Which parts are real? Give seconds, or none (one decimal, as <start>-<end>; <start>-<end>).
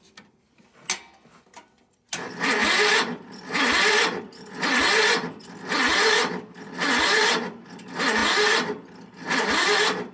0.0-10.1